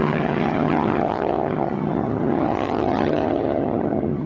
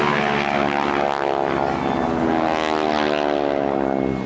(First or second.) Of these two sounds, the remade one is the first